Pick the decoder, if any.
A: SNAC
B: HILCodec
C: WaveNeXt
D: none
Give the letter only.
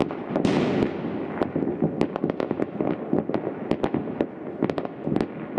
D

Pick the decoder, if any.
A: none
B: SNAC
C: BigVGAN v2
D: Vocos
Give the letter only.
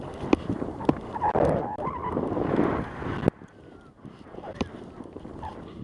A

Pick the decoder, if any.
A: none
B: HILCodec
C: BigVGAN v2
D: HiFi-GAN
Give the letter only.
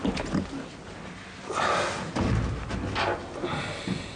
A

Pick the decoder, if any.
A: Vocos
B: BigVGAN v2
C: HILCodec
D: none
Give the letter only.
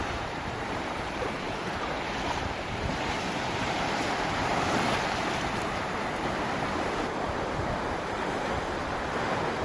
B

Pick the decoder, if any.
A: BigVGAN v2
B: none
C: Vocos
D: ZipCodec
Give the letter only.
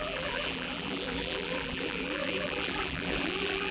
A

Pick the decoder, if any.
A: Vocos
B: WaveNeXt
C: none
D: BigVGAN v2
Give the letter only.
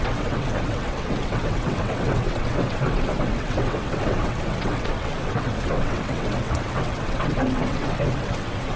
B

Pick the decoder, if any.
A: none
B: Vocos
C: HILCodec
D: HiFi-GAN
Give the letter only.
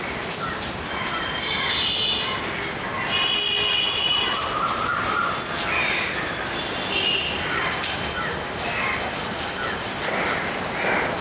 A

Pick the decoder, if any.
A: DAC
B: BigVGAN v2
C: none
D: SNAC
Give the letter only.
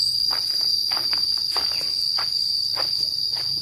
B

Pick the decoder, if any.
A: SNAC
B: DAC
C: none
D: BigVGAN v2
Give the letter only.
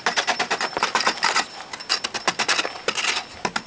C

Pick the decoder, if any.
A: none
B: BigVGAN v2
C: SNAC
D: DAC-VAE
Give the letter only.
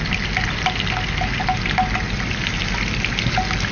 A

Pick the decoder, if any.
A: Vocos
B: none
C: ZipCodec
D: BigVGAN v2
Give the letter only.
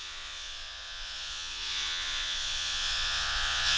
A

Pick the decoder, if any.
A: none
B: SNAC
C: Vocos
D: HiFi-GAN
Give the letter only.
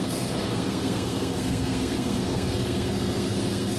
B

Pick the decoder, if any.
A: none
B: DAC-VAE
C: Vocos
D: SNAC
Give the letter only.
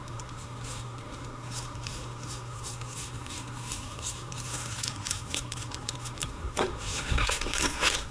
D